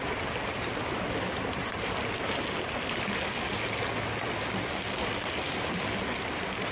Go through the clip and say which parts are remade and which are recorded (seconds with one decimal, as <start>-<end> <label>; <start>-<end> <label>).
0.0-0.5 recorded; 0.5-1.7 remade; 1.7-6.7 recorded